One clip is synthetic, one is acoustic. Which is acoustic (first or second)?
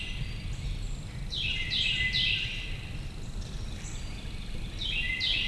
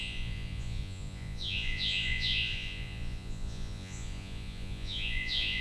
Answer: first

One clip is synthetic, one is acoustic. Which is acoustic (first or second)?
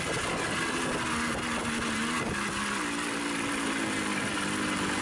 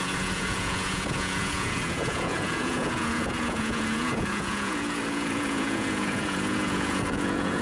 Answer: first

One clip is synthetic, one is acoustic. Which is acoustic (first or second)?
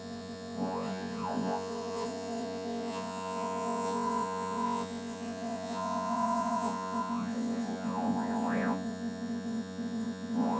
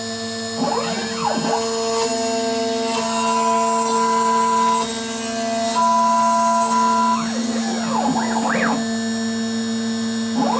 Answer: second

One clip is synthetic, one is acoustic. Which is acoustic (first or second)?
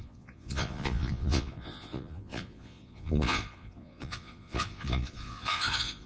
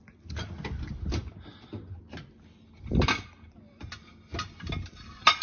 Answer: second